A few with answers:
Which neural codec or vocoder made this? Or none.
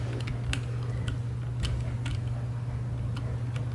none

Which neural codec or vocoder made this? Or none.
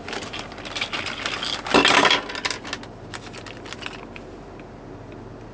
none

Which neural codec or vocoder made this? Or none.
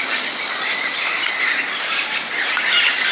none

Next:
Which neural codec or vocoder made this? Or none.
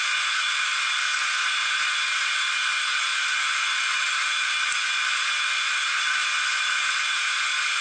none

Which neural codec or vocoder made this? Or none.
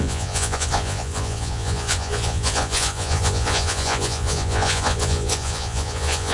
vocoder, Vocos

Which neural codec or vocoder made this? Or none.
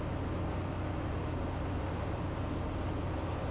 none